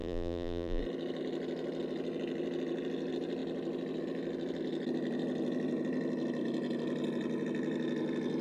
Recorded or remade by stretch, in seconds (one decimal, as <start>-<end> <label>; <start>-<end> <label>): 0.0-0.8 remade; 0.8-8.4 recorded